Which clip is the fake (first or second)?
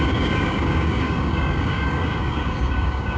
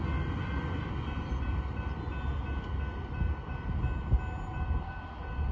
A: first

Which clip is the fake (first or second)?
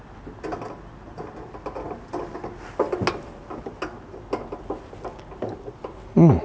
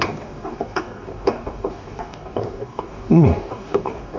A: second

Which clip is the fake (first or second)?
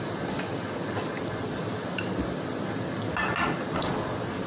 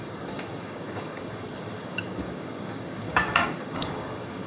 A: second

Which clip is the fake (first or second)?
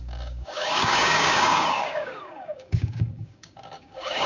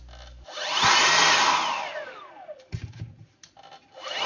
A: first